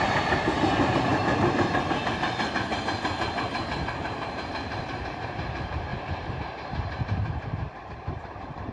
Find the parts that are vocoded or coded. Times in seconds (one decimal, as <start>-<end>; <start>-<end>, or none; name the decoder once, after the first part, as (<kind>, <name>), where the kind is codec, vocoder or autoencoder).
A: 0.0-1.1 (vocoder, BigVGAN v2); 2.8-8.7